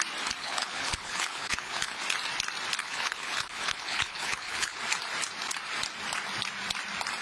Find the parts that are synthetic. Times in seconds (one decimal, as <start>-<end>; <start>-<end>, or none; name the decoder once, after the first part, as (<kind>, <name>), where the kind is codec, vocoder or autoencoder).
0.4-2.0 (codec, HILCodec); 2.8-4.8